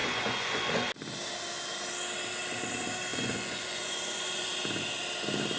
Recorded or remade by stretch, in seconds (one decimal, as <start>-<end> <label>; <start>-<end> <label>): 0.0-0.9 remade; 0.9-3.1 recorded; 3.1-4.5 remade; 4.5-5.6 recorded